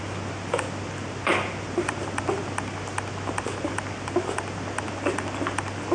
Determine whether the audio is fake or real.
real